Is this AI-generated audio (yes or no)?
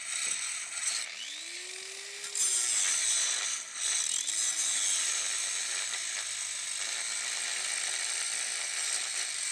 no